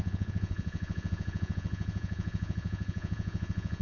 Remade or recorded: remade